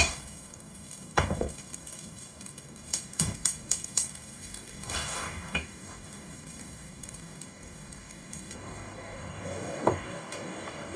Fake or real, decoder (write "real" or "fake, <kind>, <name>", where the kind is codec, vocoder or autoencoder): fake, codec, DAC